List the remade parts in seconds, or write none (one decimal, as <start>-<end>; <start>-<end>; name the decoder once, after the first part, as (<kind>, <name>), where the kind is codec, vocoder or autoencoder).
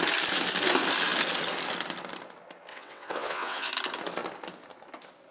2.7-3.7 (vocoder, WaveNeXt)